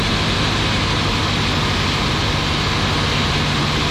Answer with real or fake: real